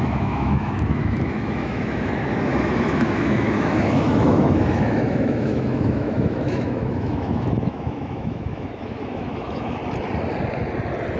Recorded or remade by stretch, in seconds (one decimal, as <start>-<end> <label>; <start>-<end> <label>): 0.0-9.8 remade; 9.8-11.2 recorded